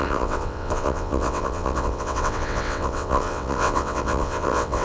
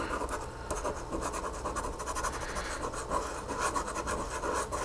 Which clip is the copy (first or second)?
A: first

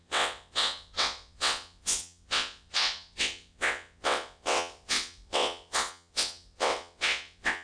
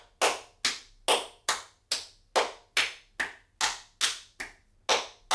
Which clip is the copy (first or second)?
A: first